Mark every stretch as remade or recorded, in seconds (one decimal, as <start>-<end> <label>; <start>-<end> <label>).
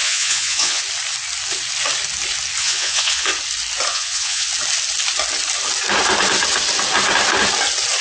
0.0-0.8 remade; 0.8-2.6 recorded; 2.6-3.3 remade; 3.3-3.9 recorded; 3.9-4.5 remade; 4.5-8.0 recorded